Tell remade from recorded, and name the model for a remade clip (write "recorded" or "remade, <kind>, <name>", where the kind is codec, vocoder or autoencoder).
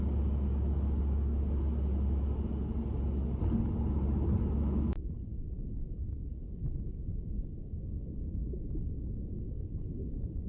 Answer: recorded